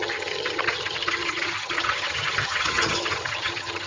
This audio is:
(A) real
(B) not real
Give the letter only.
B